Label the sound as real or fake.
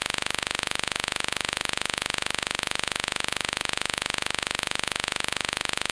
fake